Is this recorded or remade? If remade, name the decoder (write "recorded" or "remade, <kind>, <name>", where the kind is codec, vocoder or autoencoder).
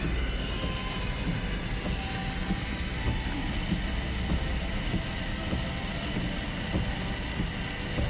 recorded